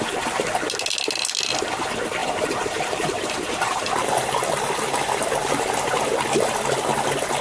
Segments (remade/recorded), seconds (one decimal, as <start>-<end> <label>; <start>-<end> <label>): 0.0-2.2 recorded; 2.2-6.0 remade; 6.0-7.4 recorded